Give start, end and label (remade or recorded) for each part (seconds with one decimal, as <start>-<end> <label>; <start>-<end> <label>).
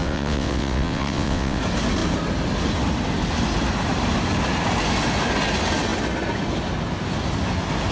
0.0-1.6 remade; 1.6-7.9 recorded